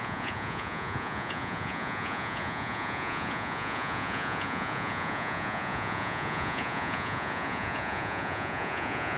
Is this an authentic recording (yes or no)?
no